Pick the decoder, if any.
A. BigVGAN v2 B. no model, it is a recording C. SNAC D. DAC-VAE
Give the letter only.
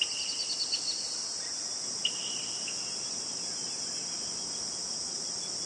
B